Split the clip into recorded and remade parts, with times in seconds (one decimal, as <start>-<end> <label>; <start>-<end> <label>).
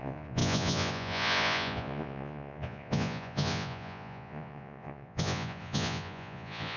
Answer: 0.0-6.8 remade